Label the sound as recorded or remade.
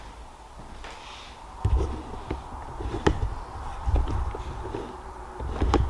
recorded